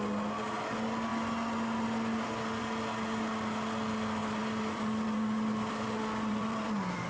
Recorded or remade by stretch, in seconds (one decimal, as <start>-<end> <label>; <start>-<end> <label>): 0.0-4.2 recorded; 4.2-7.1 remade